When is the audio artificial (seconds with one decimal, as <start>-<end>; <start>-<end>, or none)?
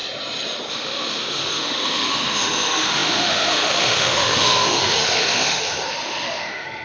0.7-6.8